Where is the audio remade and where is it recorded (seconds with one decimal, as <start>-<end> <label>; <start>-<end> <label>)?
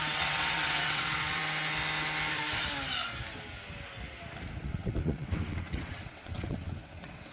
0.0-1.4 remade; 1.4-4.6 recorded; 4.6-7.3 remade